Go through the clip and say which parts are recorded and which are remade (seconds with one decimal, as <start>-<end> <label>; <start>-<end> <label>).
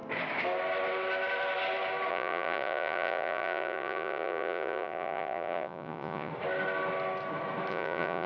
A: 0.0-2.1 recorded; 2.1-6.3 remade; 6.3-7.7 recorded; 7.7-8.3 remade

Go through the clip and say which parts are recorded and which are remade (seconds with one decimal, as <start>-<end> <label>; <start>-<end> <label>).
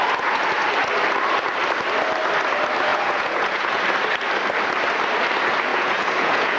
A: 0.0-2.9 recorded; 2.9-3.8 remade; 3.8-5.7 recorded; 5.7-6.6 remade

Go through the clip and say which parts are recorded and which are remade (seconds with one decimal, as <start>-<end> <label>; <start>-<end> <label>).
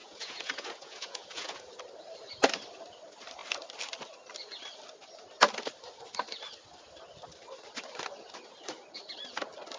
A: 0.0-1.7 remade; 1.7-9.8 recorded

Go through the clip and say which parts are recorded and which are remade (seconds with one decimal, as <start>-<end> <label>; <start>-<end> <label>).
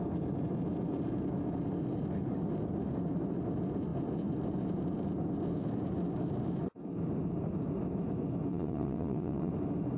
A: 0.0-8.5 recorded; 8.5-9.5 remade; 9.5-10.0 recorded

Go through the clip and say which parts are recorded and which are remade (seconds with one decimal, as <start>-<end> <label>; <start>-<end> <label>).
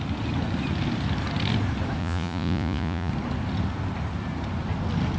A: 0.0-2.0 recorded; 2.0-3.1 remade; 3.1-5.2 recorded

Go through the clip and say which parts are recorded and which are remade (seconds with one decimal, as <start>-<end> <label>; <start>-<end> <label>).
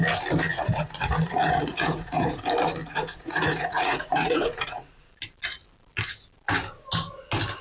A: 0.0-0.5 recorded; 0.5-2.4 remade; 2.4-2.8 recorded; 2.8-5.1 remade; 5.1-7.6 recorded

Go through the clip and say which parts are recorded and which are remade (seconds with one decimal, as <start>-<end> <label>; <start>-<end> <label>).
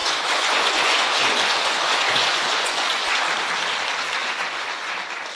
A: 0.0-3.2 remade; 3.2-4.2 recorded; 4.2-4.9 remade; 4.9-5.4 recorded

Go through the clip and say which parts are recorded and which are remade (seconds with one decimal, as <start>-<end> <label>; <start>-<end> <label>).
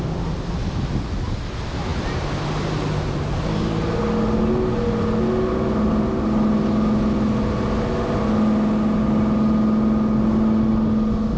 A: 0.0-11.4 recorded